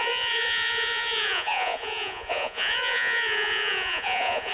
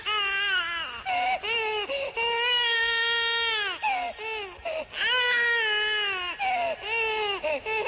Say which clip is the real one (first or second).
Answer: second